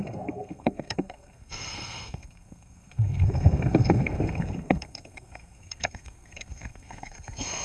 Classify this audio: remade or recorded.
remade